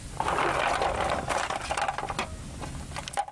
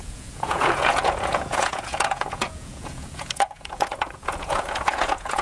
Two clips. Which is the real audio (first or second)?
first